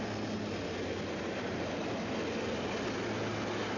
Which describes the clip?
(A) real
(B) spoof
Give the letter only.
A